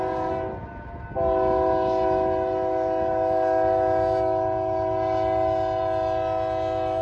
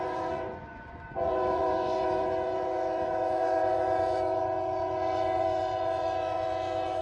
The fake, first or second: second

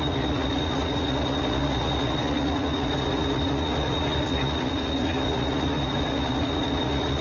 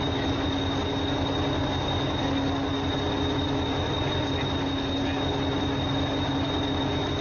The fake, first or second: first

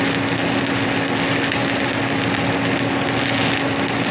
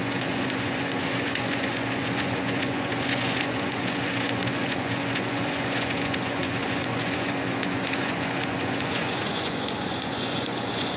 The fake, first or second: second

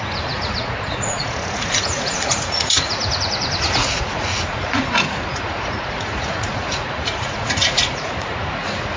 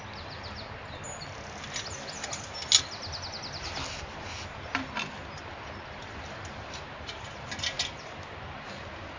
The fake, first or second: first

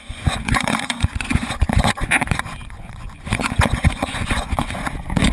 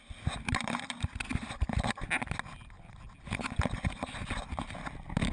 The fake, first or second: first